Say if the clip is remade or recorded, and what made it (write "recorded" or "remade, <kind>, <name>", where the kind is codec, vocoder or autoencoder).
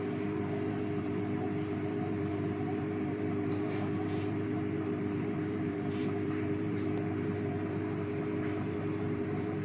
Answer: remade, vocoder, BigVGAN v2